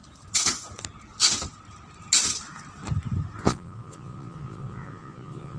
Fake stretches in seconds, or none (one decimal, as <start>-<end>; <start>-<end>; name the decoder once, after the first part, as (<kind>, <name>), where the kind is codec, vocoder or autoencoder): 3.4-5.6 (vocoder, Vocos)